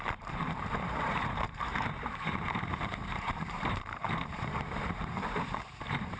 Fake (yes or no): yes